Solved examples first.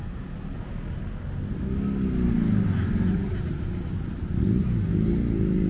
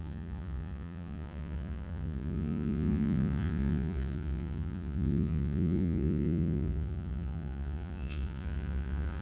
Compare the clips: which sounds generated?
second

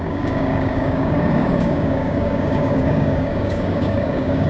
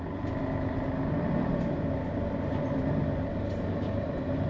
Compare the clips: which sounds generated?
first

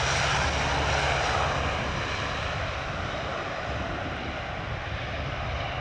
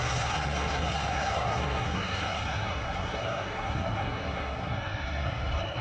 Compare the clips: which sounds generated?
second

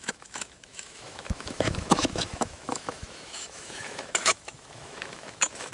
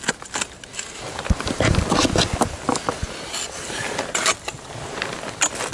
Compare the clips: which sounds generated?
first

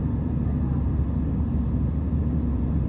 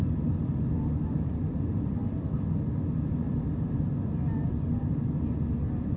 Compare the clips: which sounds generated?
first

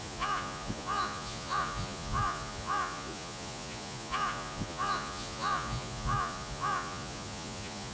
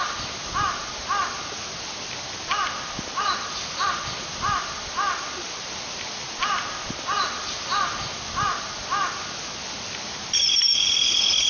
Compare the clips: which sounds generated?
first